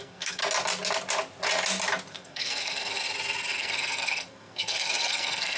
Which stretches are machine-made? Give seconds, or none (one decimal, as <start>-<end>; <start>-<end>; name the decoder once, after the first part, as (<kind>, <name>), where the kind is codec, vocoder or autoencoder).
0.0-0.4 (codec, SNAC); 2.1-3.0; 3.5-5.6